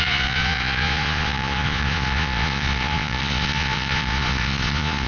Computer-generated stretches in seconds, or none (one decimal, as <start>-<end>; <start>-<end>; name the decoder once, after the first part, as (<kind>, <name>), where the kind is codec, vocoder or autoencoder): 0.0-5.1 (vocoder, Vocos)